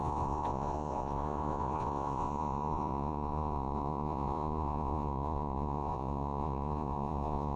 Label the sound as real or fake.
fake